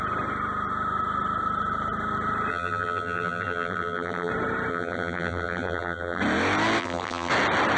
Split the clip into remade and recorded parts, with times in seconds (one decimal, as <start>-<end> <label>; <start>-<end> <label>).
0.0-2.5 recorded; 2.5-4.3 remade; 4.3-4.7 recorded; 4.7-6.2 remade; 6.2-6.8 recorded; 6.8-7.3 remade; 7.3-7.8 recorded